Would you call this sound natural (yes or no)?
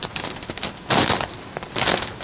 yes